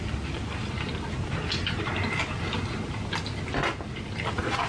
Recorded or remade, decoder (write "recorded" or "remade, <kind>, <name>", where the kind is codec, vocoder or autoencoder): recorded